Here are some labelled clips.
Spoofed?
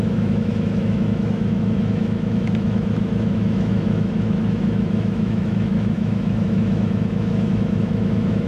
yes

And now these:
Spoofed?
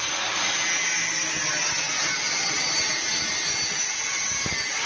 no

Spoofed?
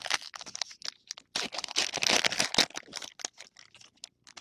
no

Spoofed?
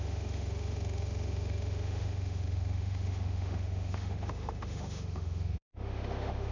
yes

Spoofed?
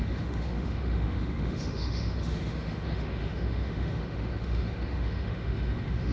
yes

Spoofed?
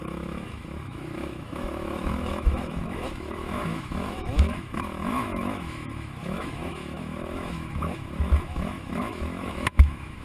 yes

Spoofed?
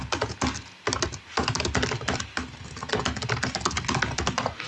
no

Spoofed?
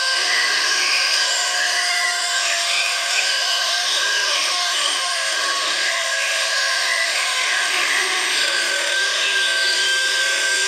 yes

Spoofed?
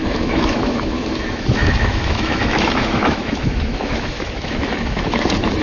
yes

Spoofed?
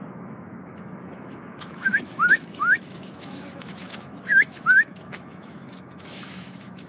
yes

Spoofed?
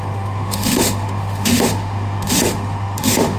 yes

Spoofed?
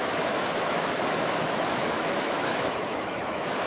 yes